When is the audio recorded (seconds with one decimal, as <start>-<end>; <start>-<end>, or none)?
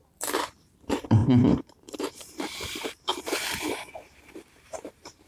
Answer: 3.1-4.0